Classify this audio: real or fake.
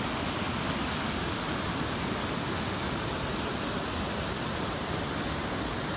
real